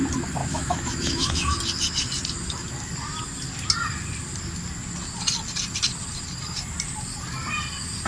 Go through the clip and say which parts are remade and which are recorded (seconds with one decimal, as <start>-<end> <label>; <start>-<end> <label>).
0.0-0.4 recorded; 0.4-1.5 remade; 1.5-8.1 recorded